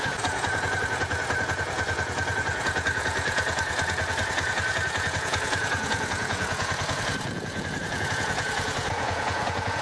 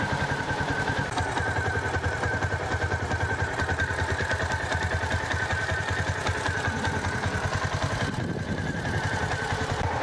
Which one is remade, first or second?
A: first